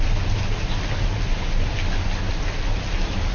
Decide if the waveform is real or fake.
real